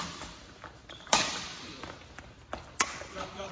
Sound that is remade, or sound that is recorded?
recorded